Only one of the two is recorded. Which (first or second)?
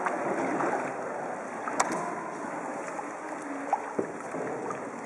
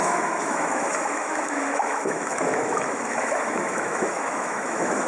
first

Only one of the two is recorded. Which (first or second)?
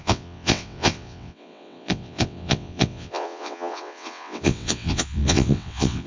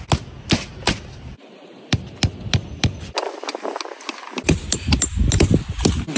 second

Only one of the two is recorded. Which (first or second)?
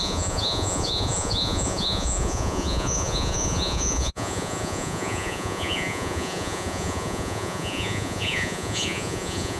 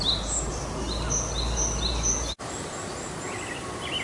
second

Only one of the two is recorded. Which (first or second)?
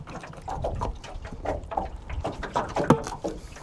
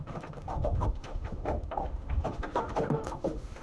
first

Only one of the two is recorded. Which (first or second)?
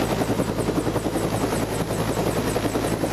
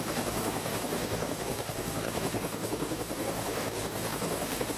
first